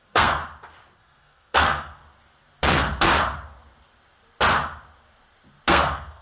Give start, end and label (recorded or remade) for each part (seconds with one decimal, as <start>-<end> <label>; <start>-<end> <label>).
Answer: 0.0-0.4 remade; 0.4-1.0 recorded; 1.0-2.0 remade; 2.0-5.7 recorded; 5.7-6.2 remade